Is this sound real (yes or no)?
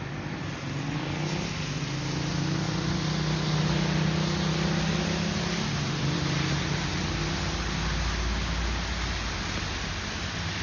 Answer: yes